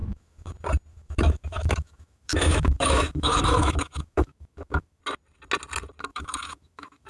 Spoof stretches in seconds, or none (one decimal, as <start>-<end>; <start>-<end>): 0.0-0.5; 0.9-5.0; 6.1-7.1